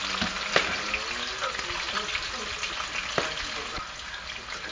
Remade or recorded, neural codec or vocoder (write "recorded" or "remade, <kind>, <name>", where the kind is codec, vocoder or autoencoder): recorded